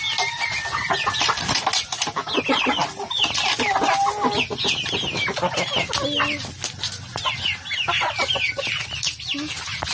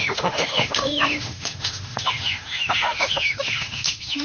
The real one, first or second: first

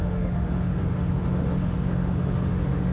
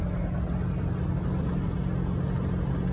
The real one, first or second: second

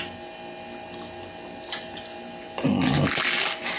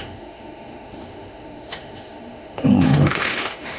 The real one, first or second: first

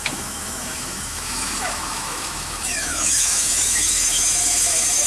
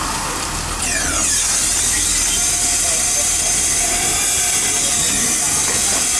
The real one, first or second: second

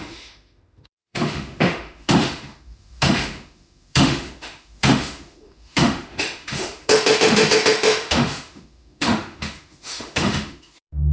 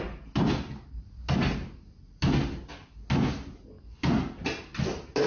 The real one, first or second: second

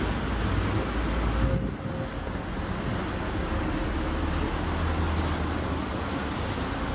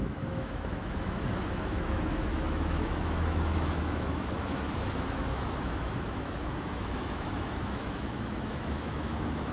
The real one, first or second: first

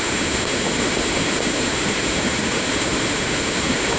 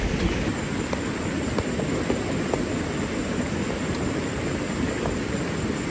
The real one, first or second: second